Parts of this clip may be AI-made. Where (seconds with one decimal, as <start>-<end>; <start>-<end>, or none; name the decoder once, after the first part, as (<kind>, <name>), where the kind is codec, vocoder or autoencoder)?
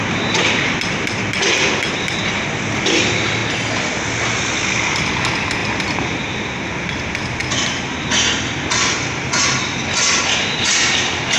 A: 5.6-6.1 (vocoder, BigVGAN v2)